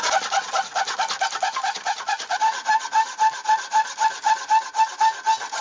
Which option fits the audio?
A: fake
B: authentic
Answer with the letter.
B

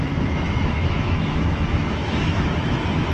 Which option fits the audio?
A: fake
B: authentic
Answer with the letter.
A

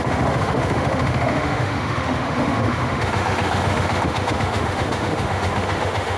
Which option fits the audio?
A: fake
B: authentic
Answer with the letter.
A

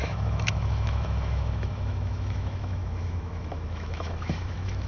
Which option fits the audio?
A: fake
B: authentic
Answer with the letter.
A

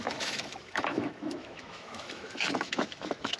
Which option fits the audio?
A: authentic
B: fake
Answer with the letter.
B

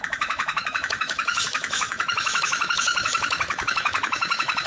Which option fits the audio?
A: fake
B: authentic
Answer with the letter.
A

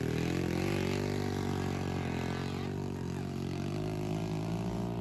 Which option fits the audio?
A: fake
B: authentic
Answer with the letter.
B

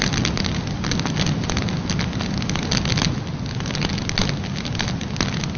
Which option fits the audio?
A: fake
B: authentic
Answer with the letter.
B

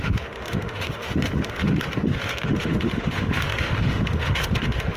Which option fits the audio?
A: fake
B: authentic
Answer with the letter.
A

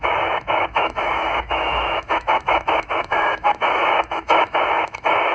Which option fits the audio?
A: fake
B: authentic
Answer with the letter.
A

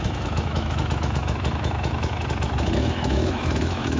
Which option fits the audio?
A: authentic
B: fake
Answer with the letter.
B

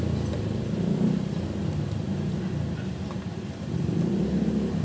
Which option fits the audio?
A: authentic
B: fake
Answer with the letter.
A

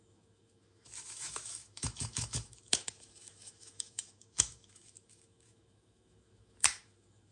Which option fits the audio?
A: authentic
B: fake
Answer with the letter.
B